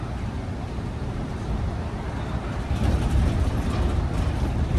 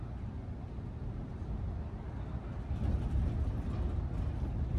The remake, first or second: first